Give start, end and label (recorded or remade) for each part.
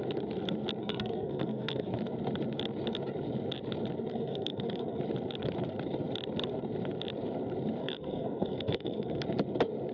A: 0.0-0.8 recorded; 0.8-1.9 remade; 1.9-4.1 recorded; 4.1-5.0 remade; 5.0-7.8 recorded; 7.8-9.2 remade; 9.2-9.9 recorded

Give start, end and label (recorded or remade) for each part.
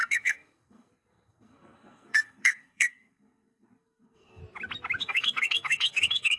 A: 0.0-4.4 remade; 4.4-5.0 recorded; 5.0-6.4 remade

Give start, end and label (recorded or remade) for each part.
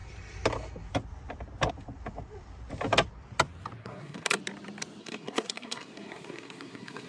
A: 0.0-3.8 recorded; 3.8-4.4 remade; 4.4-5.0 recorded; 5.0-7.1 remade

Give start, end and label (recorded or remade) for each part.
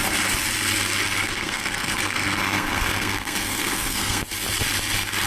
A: 0.0-1.2 recorded; 1.2-4.2 remade; 4.2-5.3 recorded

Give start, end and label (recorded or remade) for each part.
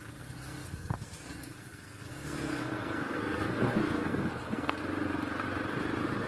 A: 0.0-4.8 remade; 4.8-6.3 recorded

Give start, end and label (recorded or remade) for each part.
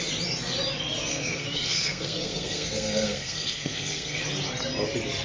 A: 0.0-1.1 recorded; 1.1-4.2 remade; 4.2-5.2 recorded